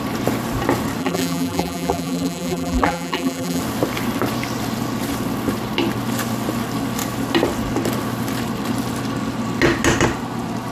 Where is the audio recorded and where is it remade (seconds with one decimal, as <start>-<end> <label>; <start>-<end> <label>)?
0.0-1.0 recorded; 1.0-3.6 remade; 3.6-10.7 recorded